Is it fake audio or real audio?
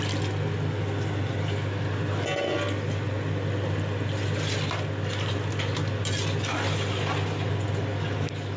real